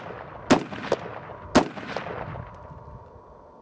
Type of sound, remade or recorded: recorded